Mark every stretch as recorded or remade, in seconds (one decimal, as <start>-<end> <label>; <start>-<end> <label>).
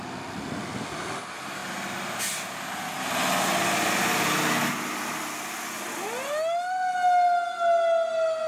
0.0-8.5 recorded